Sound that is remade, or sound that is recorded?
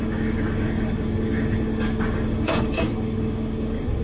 remade